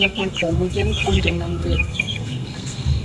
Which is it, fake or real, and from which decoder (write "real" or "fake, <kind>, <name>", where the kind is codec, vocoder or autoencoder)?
fake, codec, SNAC